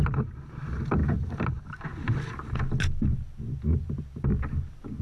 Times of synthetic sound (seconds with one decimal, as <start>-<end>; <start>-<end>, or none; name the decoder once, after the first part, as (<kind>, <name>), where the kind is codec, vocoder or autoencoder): none